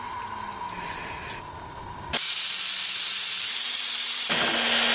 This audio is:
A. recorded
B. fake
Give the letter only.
A